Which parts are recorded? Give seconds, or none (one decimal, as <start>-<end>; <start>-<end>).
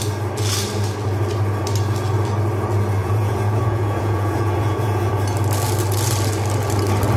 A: 0.0-3.0; 5.1-7.2